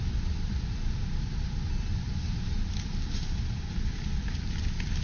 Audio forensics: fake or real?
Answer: real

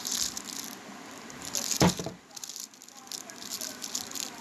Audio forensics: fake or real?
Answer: real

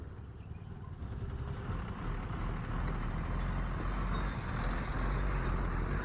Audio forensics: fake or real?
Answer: real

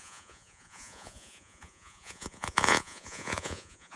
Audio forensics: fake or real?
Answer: fake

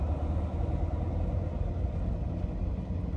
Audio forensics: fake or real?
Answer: real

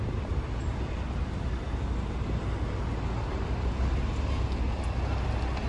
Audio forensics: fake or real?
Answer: real